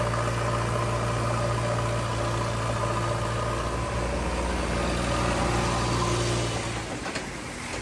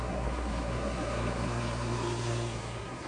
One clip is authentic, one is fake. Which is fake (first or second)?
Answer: second